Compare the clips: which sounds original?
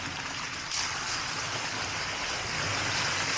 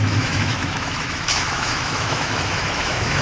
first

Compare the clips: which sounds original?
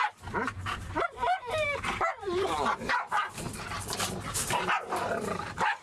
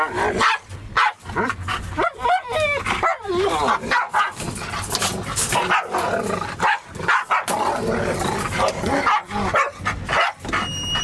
second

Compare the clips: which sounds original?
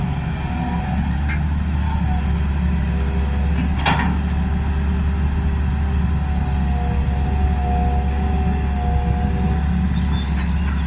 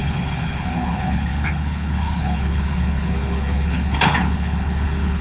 first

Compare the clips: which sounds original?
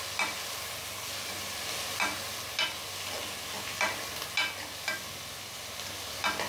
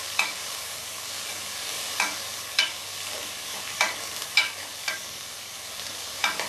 first